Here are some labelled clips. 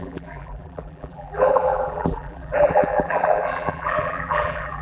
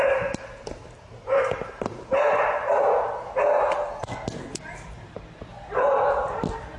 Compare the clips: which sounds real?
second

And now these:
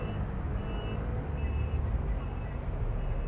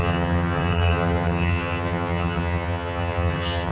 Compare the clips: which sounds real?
first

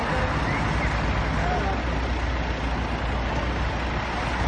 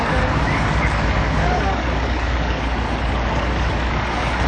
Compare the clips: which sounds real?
first